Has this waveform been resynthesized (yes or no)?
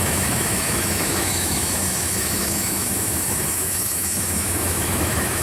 yes